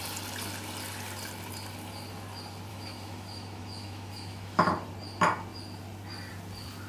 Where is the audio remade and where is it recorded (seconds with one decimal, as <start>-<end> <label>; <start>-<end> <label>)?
0.0-2.7 recorded; 2.7-4.7 remade; 4.7-6.9 recorded